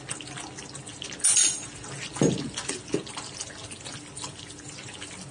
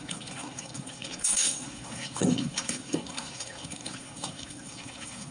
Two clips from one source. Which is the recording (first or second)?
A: first